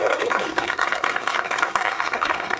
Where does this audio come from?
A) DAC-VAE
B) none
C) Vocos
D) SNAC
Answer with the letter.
D